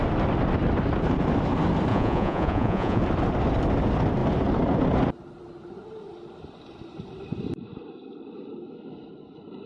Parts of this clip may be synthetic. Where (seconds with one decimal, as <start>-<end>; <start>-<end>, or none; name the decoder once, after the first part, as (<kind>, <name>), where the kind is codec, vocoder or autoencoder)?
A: 1.9-3.0 (vocoder, Vocos)